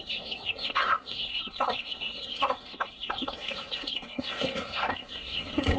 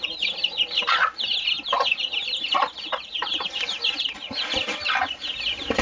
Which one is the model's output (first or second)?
first